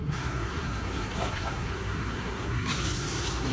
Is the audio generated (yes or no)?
yes